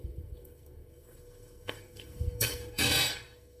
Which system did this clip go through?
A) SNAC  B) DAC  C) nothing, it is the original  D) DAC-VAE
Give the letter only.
A